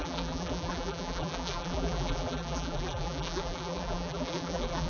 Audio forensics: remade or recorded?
remade